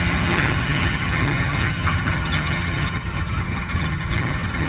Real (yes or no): no